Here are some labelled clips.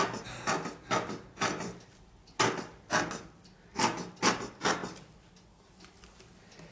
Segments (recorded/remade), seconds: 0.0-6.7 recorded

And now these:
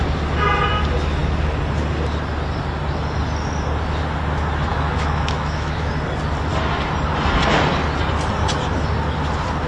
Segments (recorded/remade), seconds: 0.0-4.7 recorded; 4.7-5.9 remade; 5.9-9.7 recorded

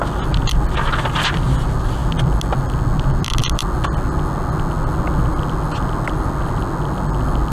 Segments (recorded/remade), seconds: 0.0-7.5 recorded

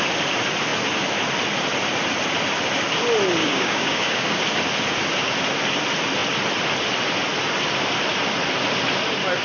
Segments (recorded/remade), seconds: 0.0-3.4 recorded; 3.4-4.4 remade; 4.4-9.4 recorded

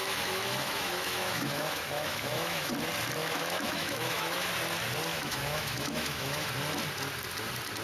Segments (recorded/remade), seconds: 0.0-2.7 remade; 2.7-3.2 recorded; 3.2-4.5 remade; 4.5-5.1 recorded; 5.1-6.5 remade; 6.5-7.8 recorded

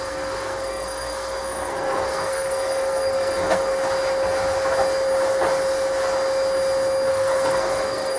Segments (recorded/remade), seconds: 0.0-3.7 remade; 3.7-7.1 recorded; 7.1-8.2 remade

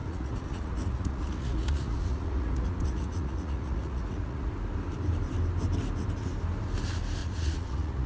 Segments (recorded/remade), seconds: 0.0-4.5 remade; 4.5-7.2 recorded; 7.2-8.1 remade